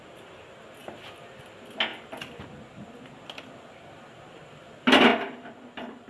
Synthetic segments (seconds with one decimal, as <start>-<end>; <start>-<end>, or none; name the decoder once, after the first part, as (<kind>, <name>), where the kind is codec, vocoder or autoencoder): none